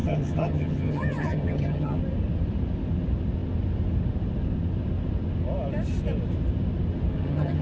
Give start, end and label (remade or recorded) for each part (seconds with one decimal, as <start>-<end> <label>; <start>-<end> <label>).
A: 0.0-2.0 remade; 2.0-7.1 recorded; 7.1-7.6 remade